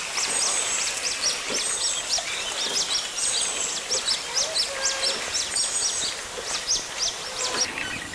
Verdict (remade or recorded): recorded